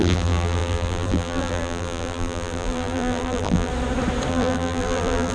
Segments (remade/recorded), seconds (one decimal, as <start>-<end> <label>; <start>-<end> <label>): 0.0-3.7 remade; 3.7-4.3 recorded; 4.3-5.3 remade